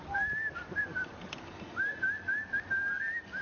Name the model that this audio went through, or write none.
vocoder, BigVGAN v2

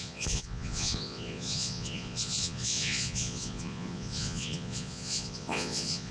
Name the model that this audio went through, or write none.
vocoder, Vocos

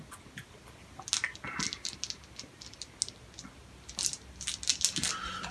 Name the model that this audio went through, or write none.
none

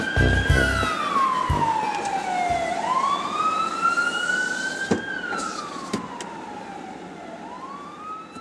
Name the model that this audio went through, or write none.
none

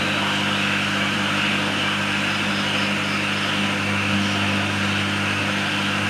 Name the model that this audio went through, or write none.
none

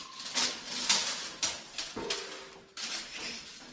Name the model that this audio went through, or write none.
none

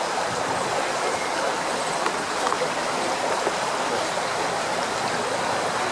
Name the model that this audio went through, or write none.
none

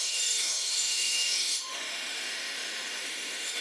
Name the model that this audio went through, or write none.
autoencoder, DAC-VAE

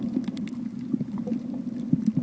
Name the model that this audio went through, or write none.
vocoder, BigVGAN v2